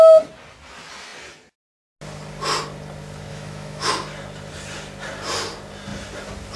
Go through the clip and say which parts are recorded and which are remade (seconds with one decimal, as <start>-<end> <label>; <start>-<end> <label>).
0.0-3.3 recorded; 3.3-3.9 remade; 3.9-6.6 recorded